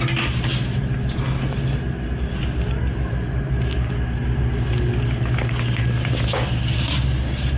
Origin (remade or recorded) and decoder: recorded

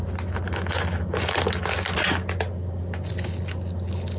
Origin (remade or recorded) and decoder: recorded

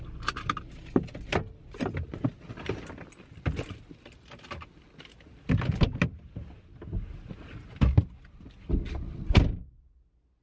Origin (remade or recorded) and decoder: recorded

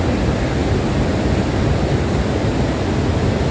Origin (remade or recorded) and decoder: recorded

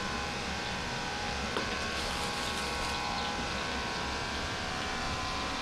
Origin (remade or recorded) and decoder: remade, vocoder, BigVGAN v2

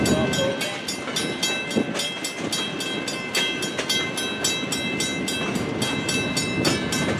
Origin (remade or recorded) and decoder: recorded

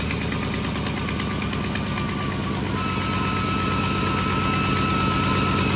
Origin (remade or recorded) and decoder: recorded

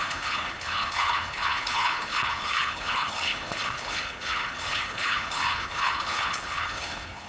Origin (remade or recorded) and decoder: remade, codec, HILCodec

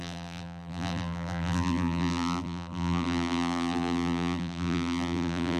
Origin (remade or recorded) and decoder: remade, vocoder, BigVGAN v2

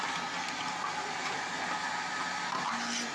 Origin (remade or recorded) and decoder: recorded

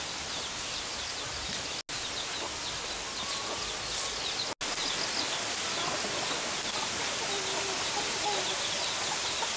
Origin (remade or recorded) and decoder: recorded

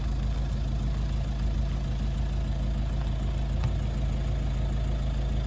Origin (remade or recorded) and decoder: recorded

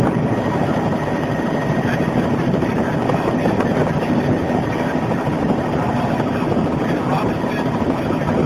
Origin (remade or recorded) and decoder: remade, vocoder, BigVGAN v2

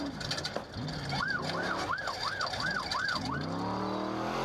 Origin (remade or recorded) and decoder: recorded